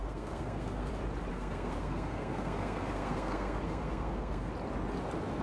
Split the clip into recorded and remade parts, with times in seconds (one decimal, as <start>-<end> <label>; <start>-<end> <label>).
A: 0.0-0.9 remade; 0.9-1.3 recorded; 1.3-4.5 remade; 4.5-5.4 recorded